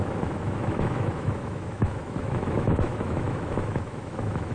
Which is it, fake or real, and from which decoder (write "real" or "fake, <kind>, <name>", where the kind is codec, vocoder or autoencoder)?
fake, autoencoder, DAC-VAE